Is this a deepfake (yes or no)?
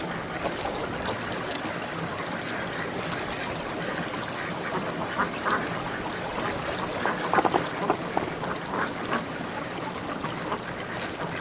yes